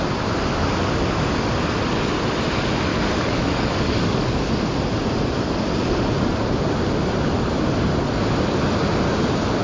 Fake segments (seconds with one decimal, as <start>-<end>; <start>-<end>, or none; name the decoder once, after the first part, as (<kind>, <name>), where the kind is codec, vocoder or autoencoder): 2.9-4.5 (codec, DAC)